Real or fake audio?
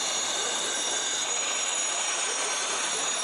fake